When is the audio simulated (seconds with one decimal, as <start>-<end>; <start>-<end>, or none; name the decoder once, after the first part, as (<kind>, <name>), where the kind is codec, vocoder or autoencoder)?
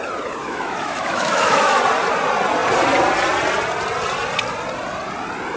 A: 0.4-1.8 (autoencoder, DAC-VAE)